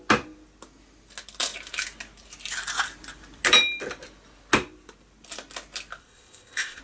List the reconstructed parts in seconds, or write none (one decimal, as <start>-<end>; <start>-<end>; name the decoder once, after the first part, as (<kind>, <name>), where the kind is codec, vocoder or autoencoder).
6.0-6.8 (codec, ZipCodec)